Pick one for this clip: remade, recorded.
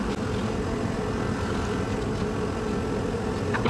recorded